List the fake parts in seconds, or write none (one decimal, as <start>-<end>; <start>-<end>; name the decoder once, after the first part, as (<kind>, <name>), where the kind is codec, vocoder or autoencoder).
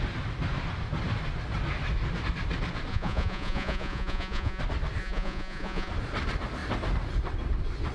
2.9-4.6 (vocoder, Vocos); 5.0-5.9